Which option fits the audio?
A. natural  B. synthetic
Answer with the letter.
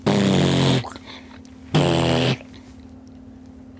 A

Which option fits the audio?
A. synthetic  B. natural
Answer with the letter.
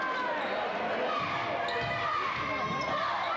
B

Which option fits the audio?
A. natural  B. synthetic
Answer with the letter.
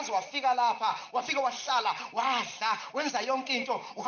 A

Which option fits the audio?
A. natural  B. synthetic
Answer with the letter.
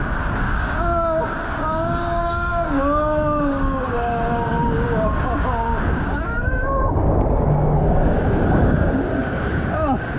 B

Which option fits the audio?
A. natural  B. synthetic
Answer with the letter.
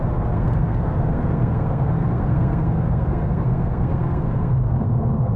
B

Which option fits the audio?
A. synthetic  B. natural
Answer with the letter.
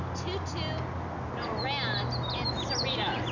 B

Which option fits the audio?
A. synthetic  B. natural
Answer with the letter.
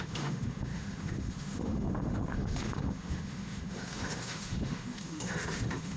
A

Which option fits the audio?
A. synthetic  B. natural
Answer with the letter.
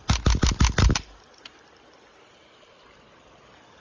B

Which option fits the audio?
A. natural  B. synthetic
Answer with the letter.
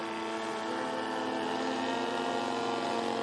A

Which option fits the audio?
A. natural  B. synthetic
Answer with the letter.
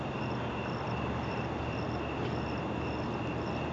A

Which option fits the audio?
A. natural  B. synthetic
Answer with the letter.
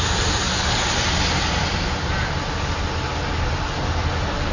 A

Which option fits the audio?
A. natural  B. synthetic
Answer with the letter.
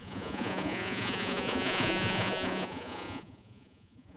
B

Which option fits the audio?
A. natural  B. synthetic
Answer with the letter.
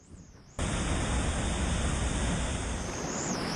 A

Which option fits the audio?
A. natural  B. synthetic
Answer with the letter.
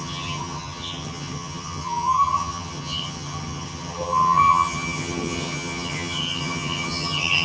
B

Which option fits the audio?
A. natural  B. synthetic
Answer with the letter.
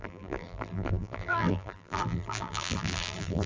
B